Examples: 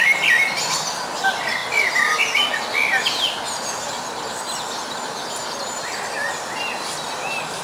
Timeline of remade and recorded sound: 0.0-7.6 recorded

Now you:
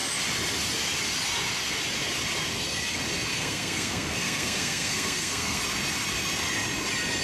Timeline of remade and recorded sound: 0.0-3.3 recorded; 3.3-5.6 remade; 5.6-7.2 recorded